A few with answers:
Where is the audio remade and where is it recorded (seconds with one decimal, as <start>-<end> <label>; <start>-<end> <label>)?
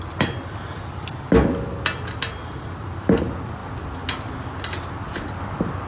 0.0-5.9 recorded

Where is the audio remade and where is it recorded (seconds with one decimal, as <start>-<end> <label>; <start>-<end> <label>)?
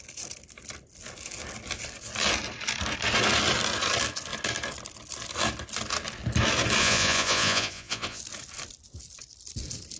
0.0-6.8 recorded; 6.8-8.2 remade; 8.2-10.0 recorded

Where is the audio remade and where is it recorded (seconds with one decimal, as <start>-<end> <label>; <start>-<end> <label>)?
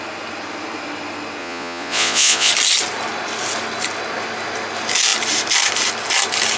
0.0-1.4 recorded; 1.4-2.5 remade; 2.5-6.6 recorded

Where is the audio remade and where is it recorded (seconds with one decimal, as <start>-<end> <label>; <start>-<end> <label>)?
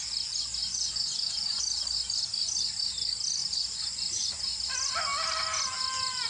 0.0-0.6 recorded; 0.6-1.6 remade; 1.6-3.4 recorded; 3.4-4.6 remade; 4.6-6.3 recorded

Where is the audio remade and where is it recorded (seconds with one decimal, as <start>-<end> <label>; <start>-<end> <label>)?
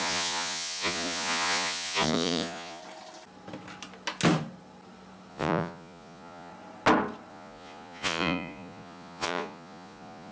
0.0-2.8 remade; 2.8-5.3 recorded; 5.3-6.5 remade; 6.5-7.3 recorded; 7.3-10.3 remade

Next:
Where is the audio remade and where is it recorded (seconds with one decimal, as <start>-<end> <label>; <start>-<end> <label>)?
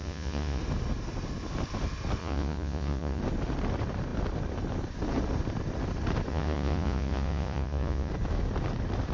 0.0-0.6 remade; 0.6-2.2 recorded; 2.2-3.2 remade; 3.2-6.3 recorded; 6.3-8.1 remade; 8.1-9.1 recorded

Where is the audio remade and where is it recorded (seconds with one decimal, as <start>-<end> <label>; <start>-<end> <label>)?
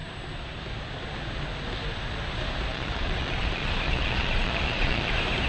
0.0-2.7 recorded; 2.7-5.1 remade; 5.1-5.5 recorded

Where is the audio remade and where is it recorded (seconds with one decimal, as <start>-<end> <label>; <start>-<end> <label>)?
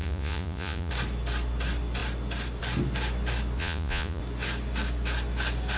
0.0-0.9 remade; 0.9-3.6 recorded; 3.6-4.2 remade; 4.2-5.8 recorded